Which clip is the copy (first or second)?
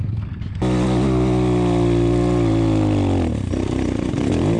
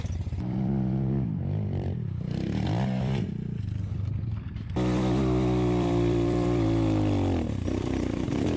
second